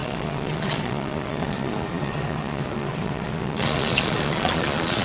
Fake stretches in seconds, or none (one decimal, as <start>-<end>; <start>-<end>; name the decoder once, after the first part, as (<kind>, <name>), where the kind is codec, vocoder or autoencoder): 0.0-5.0 (vocoder, Vocos)